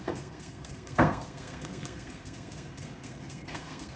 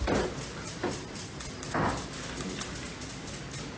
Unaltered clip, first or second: second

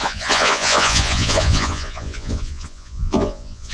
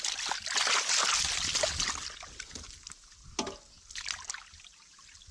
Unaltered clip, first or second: second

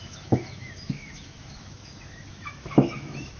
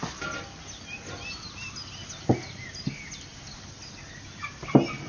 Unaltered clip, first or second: second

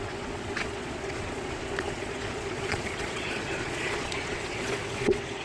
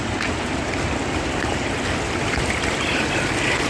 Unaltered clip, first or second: second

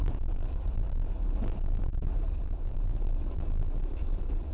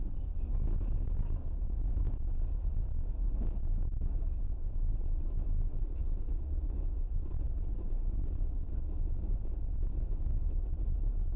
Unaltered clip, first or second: second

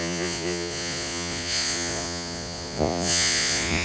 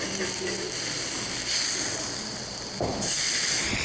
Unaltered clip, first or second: second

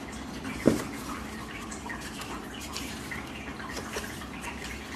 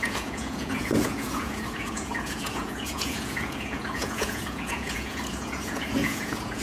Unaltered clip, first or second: first